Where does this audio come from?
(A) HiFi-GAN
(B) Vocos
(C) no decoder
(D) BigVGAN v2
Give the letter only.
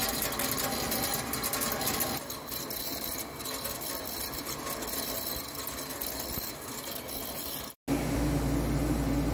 C